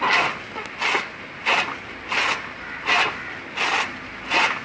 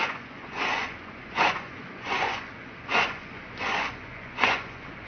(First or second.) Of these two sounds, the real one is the first